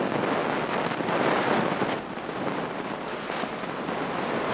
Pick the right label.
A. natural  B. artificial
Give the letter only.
A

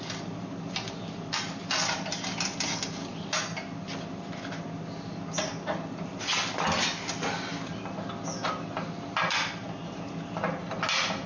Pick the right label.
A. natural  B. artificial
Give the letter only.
A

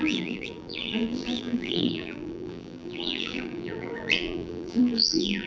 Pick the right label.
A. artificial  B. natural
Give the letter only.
A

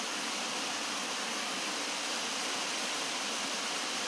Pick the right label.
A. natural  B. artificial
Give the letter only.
B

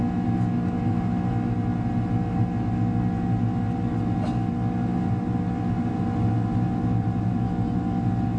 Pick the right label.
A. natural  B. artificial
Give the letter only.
A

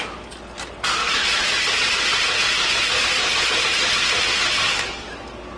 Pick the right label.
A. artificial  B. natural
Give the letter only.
B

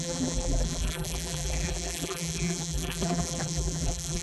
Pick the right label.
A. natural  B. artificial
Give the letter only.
B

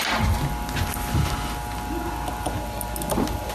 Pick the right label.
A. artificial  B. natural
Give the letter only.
B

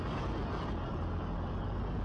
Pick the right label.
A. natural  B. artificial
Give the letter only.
A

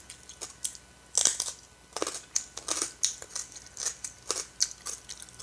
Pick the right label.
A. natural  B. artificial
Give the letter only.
A